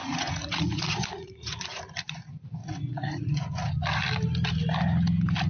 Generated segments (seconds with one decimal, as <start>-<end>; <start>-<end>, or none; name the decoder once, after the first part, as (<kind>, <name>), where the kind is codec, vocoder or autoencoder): 0.0-1.8 (vocoder, Vocos); 2.6-3.7